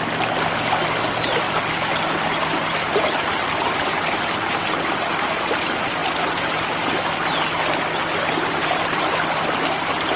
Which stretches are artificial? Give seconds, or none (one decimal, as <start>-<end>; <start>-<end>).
none